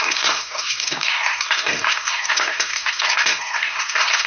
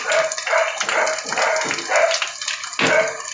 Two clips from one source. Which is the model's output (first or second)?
first